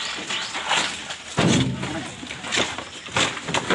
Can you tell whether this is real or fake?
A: real